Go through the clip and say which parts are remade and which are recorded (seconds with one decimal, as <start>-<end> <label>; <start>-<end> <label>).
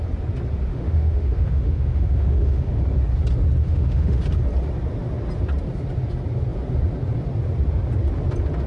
0.0-0.7 recorded; 0.7-2.8 remade; 2.8-3.6 recorded; 3.6-4.2 remade; 4.2-8.7 recorded